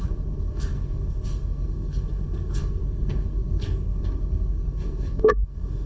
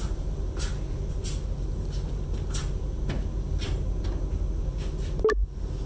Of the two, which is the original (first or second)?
second